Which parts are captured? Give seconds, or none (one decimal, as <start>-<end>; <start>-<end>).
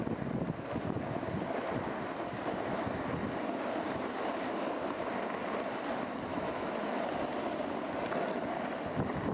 0.0-6.3; 7.0-9.3